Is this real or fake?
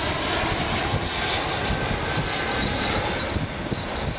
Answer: real